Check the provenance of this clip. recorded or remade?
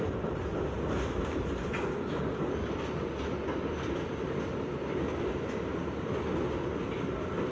recorded